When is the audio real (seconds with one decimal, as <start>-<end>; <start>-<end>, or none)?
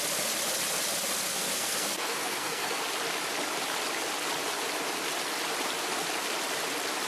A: 0.0-1.3; 2.8-7.1